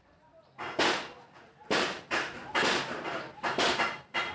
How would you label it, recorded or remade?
recorded